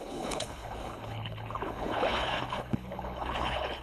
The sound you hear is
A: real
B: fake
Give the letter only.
B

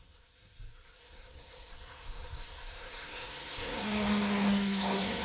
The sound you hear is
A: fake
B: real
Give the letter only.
A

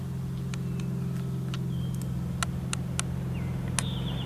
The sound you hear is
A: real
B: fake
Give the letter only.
A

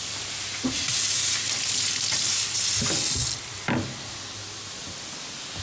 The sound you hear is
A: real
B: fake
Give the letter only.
A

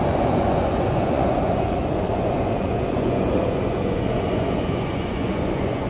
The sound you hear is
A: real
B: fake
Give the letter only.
B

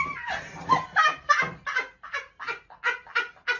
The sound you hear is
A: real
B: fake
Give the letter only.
A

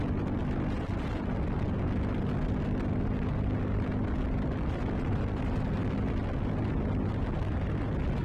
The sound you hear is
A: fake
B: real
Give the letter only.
B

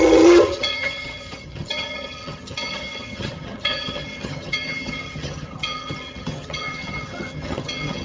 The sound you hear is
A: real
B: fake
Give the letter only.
B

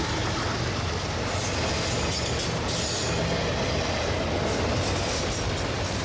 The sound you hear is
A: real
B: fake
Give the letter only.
A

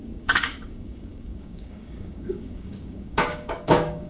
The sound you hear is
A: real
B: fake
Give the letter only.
B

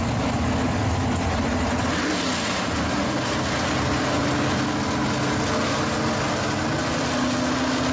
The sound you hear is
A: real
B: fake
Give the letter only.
A